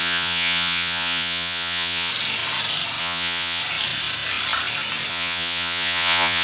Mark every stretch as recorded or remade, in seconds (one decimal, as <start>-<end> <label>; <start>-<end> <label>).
0.0-2.1 remade; 2.1-3.0 recorded; 3.0-3.6 remade; 3.6-5.1 recorded; 5.1-6.4 remade